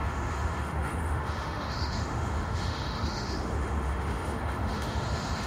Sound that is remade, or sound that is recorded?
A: remade